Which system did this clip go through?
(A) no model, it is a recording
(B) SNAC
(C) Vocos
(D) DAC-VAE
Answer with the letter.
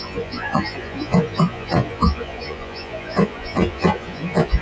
C